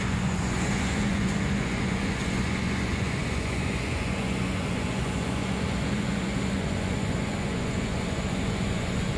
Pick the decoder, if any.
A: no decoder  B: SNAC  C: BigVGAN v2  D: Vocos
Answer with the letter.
D